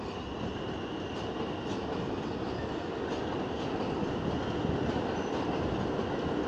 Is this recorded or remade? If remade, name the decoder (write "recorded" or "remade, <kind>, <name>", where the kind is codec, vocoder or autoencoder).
recorded